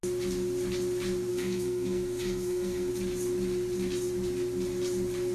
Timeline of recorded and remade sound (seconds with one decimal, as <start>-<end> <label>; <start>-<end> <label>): 0.0-1.3 recorded; 1.3-2.9 remade; 2.9-5.3 recorded

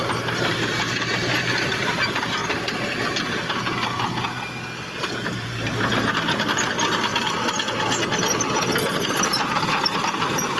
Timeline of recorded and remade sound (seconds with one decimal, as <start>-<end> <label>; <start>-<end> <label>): 0.0-2.4 remade; 2.4-5.1 recorded; 5.1-7.1 remade; 7.1-9.0 recorded; 9.0-10.6 remade

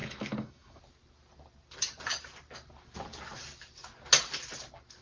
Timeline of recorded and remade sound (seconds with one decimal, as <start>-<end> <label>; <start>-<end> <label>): 0.0-0.8 remade; 0.8-5.0 recorded

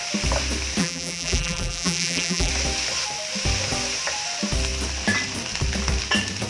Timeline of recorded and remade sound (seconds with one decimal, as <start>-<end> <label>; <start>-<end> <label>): 0.0-0.8 recorded; 0.8-2.5 remade; 2.5-6.5 recorded

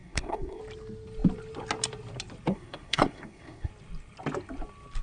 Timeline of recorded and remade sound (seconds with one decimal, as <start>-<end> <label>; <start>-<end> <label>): 0.0-0.6 remade; 0.6-2.5 recorded; 2.5-3.7 remade; 3.7-5.0 recorded

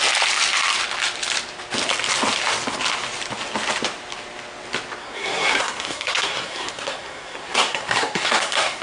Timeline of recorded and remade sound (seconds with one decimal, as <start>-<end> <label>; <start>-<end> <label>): 0.0-5.0 recorded; 5.0-8.8 remade

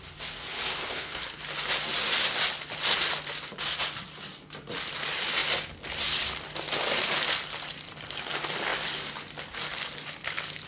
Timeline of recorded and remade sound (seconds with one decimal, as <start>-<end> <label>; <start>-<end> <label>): 0.0-0.7 recorded; 0.7-1.4 remade; 1.4-10.7 recorded

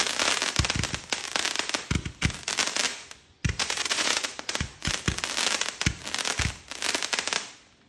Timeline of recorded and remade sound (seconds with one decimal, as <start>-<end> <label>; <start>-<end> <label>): 0.0-2.9 recorded; 2.9-4.9 remade; 4.9-7.9 recorded